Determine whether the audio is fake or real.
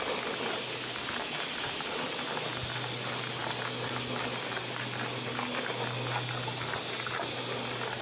real